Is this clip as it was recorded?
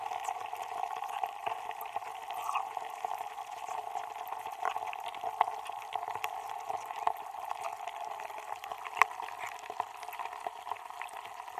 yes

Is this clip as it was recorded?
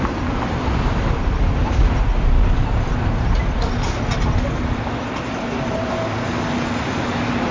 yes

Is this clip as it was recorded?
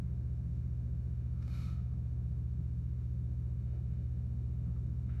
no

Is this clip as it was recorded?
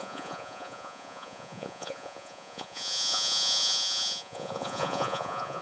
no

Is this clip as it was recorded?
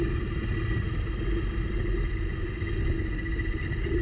yes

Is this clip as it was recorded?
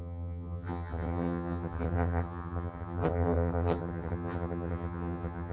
no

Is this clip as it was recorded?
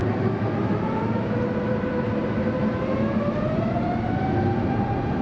yes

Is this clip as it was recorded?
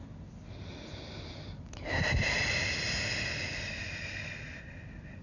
yes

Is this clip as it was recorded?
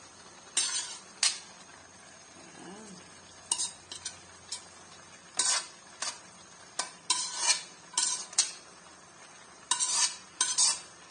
yes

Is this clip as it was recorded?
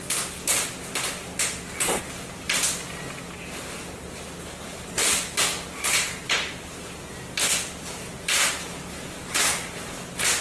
yes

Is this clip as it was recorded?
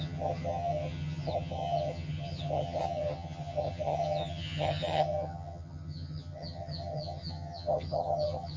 no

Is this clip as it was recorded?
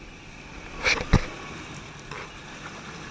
yes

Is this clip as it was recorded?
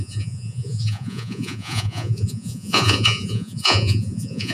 no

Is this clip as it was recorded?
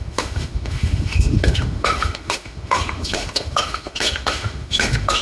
no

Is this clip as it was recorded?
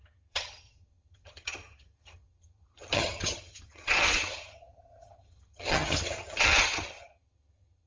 no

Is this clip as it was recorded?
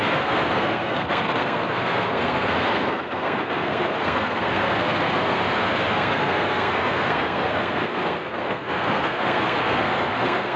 no